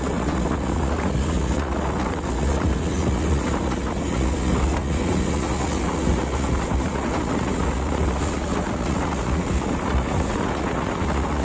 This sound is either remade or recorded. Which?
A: remade